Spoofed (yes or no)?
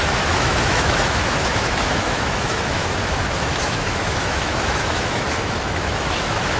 yes